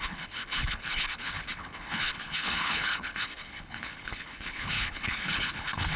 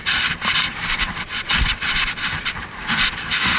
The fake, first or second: first